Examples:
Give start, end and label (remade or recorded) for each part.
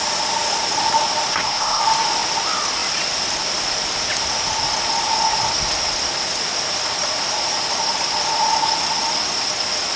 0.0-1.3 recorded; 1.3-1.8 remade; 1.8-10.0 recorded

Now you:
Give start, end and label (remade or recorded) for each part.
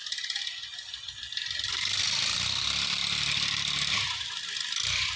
0.0-2.0 remade; 2.0-3.0 recorded; 3.0-3.7 remade; 3.7-5.2 recorded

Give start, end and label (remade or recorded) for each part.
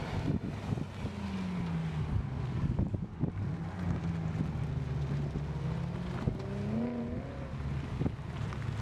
0.0-1.8 recorded; 1.8-3.3 remade; 3.3-8.8 recorded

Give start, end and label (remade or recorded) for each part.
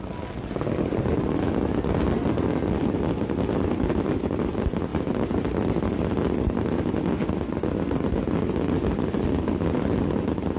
0.0-10.6 recorded